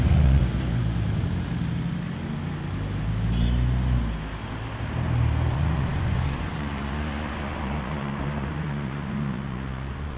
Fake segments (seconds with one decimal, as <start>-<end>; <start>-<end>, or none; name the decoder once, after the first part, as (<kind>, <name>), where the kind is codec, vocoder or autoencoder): 0.0-0.4 (vocoder, Vocos); 5.5-10.2